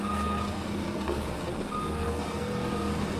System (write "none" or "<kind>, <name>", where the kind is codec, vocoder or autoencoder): codec, SNAC